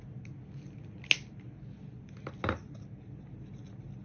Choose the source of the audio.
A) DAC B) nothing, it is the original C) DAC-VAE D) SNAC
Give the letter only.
B